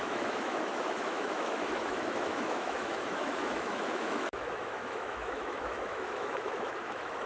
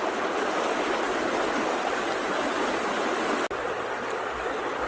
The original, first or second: second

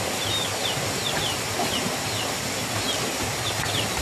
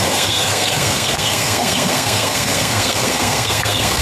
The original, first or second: first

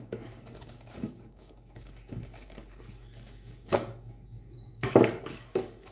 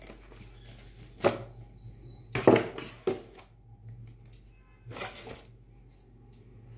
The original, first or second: second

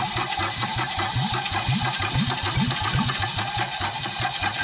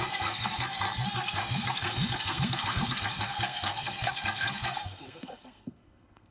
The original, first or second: first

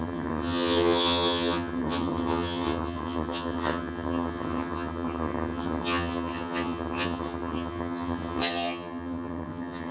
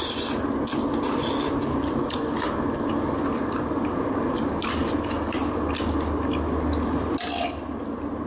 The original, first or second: second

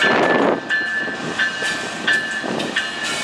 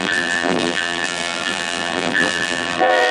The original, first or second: first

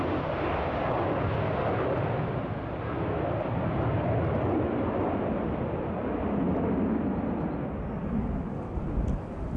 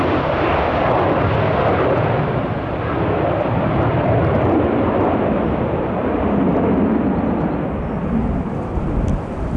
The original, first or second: first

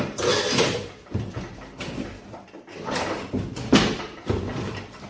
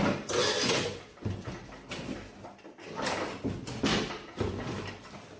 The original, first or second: second